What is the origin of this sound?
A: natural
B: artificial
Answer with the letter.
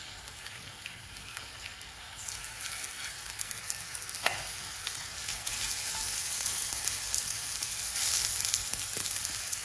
B